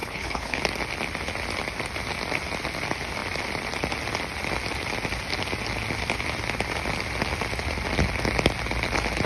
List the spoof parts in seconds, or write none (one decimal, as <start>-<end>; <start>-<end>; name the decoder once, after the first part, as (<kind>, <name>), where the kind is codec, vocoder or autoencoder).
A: 0.0-0.6 (codec, HILCodec)